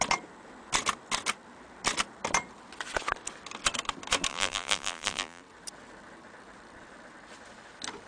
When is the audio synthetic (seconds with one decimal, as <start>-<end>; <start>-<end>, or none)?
4.3-5.4